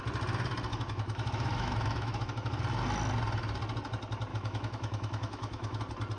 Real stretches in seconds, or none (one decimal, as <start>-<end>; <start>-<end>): 0.0-0.7; 2.6-4.3; 5.8-6.2